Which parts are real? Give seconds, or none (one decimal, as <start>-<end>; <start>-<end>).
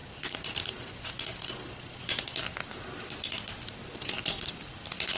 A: 1.1-5.2